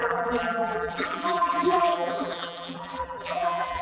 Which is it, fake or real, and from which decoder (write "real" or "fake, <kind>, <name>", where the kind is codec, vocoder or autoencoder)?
fake, vocoder, BigVGAN v2